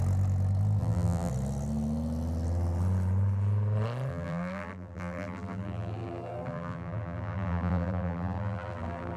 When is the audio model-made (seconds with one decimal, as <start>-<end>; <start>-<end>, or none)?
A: 0.8-1.3; 4.1-9.2